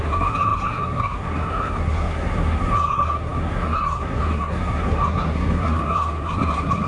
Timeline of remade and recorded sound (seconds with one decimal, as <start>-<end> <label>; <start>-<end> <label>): 0.0-6.9 remade